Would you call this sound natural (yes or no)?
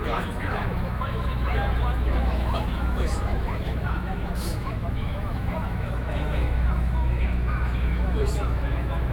no